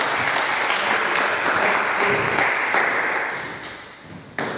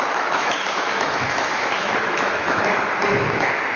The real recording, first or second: first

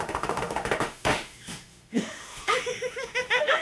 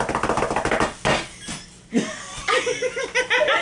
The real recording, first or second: second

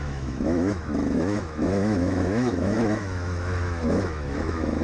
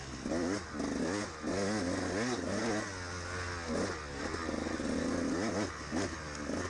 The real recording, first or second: second